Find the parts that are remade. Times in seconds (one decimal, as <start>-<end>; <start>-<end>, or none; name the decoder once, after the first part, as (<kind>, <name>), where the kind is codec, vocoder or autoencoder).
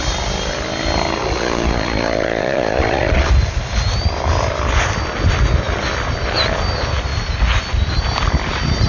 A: 1.2-3.3 (vocoder, Vocos)